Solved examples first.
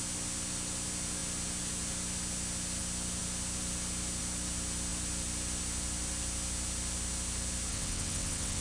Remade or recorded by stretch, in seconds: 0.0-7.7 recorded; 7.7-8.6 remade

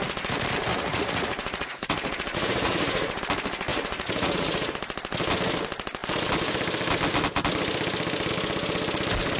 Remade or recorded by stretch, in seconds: 0.0-0.7 recorded; 0.7-3.2 remade; 3.2-3.7 recorded; 3.7-4.7 remade; 4.7-9.4 recorded

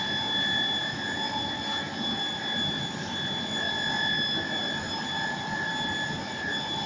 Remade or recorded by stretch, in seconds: 0.0-6.9 recorded

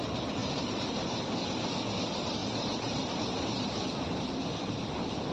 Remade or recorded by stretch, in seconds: 0.0-0.4 recorded; 0.4-1.1 remade; 1.1-2.4 recorded; 2.4-3.7 remade; 3.7-5.3 recorded

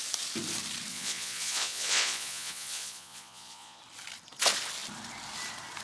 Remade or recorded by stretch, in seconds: 0.0-0.9 recorded; 0.9-3.8 remade; 3.8-5.8 recorded